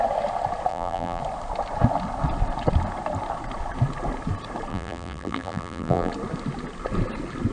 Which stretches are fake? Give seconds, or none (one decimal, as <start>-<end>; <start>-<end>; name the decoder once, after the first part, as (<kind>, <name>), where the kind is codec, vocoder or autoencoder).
0.7-1.2 (vocoder, BigVGAN v2); 4.7-6.1